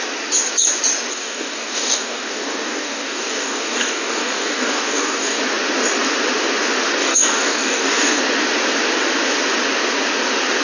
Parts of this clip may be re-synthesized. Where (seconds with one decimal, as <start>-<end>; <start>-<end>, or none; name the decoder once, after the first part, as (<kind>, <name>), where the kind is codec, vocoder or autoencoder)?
1.1-5.4 (codec, DAC); 7.0-8.2